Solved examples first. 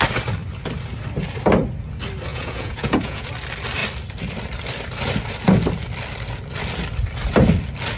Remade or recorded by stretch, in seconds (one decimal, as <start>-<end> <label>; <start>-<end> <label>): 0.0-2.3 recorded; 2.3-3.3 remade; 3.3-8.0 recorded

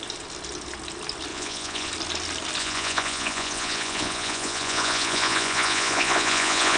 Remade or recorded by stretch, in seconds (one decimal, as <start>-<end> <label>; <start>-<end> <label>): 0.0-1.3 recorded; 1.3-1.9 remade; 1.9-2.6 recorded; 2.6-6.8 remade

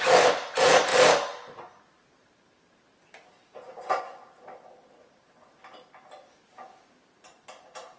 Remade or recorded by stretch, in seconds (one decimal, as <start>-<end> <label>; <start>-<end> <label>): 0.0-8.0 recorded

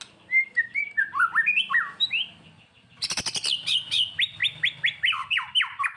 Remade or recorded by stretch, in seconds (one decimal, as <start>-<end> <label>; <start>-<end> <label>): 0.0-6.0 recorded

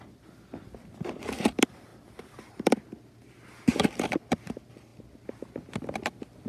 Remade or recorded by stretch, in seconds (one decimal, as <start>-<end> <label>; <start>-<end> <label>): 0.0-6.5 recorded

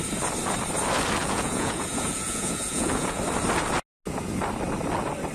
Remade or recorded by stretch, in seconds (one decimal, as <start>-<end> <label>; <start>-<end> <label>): 0.0-1.2 recorded; 1.2-3.2 remade; 3.2-5.3 recorded